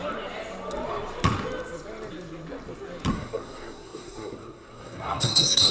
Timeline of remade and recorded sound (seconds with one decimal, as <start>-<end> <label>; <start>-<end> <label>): 0.0-3.1 recorded; 3.1-5.7 remade